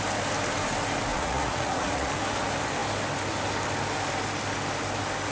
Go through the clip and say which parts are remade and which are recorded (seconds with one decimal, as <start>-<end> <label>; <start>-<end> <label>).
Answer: 0.0-1.1 recorded; 1.1-2.1 remade; 2.1-5.3 recorded